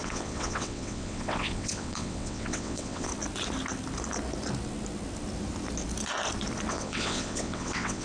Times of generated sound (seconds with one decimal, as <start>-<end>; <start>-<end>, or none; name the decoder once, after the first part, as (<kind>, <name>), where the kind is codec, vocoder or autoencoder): 0.0-3.1 (vocoder, WaveNeXt); 6.7-8.0